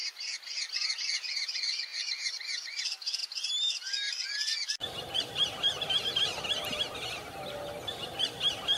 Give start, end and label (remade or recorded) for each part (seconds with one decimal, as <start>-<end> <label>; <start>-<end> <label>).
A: 0.0-3.2 recorded; 3.2-3.8 remade; 3.8-4.8 recorded; 4.8-5.8 remade; 5.8-8.8 recorded